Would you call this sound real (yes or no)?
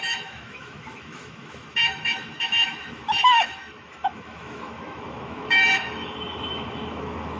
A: no